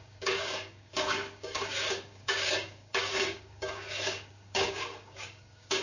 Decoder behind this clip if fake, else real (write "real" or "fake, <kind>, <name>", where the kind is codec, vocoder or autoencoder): fake, codec, DAC